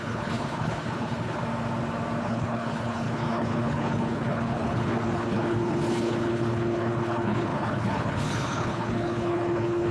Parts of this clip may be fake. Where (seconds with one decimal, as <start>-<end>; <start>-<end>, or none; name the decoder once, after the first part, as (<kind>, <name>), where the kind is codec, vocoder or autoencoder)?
0.0-1.4 (codec, HILCodec); 2.2-9.9